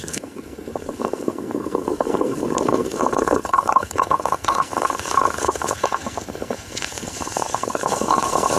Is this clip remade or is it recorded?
remade